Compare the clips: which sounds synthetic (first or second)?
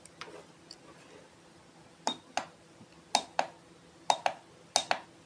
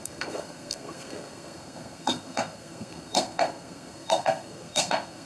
second